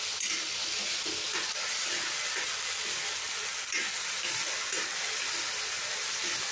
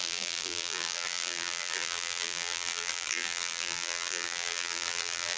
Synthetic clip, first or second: second